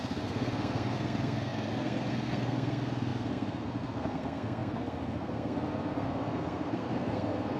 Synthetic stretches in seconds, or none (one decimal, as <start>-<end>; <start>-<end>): 0.0-7.6